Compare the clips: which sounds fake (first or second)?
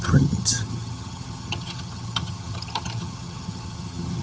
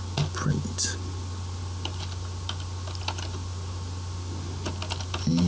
first